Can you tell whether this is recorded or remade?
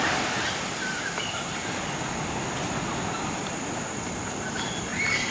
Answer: recorded